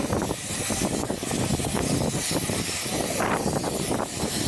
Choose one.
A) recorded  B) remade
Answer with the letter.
A